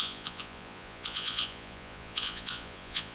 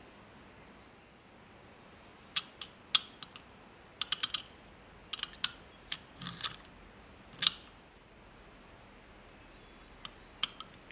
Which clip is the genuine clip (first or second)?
second